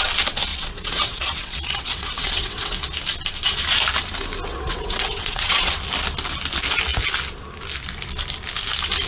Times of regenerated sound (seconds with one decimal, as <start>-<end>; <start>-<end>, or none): 0.5-2.7; 4.5-5.7